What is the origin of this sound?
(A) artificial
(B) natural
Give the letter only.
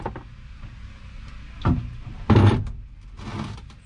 B